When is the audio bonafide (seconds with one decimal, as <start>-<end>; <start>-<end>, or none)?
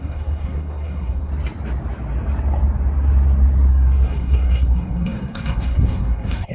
1.3-3.7